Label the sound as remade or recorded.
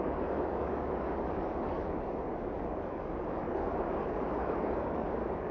remade